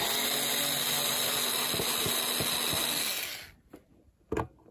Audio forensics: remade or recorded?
recorded